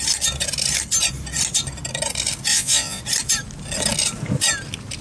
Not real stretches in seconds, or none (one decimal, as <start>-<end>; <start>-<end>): 2.5-3.0